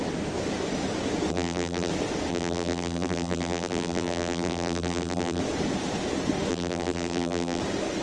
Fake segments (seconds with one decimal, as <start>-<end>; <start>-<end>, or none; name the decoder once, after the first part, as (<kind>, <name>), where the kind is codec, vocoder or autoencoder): 1.3-1.9 (vocoder, BigVGAN v2); 2.3-5.4; 6.5-7.6

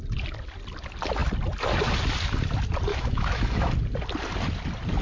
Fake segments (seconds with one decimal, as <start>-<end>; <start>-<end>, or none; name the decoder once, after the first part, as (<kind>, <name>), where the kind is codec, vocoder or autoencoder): 2.9-3.7 (autoencoder, DAC-VAE)

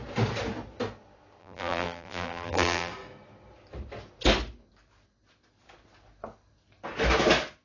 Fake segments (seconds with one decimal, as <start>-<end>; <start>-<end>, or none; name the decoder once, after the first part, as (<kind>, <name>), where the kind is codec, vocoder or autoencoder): 1.4-2.9 (vocoder, BigVGAN v2)

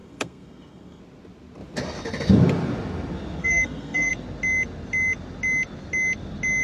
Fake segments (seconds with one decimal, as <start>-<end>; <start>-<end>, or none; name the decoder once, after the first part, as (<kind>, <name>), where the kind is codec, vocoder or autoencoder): 0.0-1.0 (codec, SNAC); 3.4-4.1

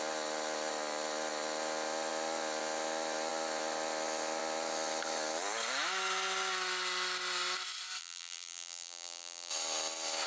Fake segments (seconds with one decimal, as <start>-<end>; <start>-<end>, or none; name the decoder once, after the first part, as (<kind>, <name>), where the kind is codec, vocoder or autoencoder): 8.0-9.5 (vocoder, BigVGAN v2)

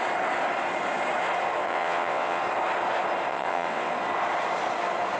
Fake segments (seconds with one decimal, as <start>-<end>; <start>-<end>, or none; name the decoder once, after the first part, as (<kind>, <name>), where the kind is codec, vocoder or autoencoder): 1.6-2.4 (vocoder, WaveNeXt); 3.3-3.9